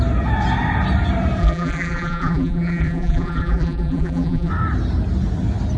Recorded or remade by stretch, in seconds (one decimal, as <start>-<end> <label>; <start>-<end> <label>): 0.0-1.4 recorded; 1.4-4.5 remade; 4.5-5.8 recorded

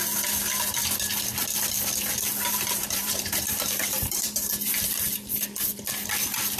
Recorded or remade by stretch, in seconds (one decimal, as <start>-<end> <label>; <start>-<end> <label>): 0.0-2.8 recorded; 2.8-4.5 remade; 4.5-6.6 recorded

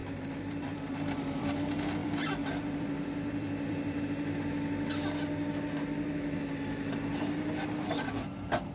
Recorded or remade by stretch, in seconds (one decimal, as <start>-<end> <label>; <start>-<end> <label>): 0.0-1.5 remade; 1.5-2.0 recorded; 2.0-4.0 remade; 4.0-8.7 recorded

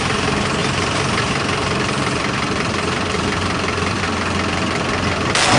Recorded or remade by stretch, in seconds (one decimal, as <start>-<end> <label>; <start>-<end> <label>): 0.0-0.6 recorded; 0.6-4.0 remade; 4.0-5.6 recorded

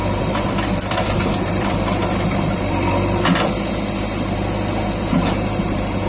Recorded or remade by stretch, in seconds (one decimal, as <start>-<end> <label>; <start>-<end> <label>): 0.0-3.7 remade; 3.7-6.1 recorded